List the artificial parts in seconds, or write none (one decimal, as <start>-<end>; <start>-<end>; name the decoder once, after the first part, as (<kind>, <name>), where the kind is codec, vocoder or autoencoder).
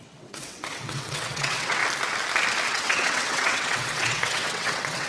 0.0-1.8 (vocoder, WaveNeXt); 2.7-5.1